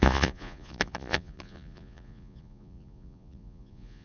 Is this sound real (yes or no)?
no